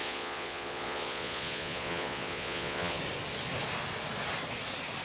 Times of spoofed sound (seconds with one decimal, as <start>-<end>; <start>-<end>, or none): 0.0-3.0